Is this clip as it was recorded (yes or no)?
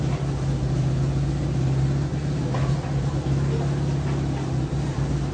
yes